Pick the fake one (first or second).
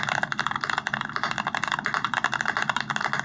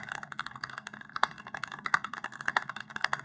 second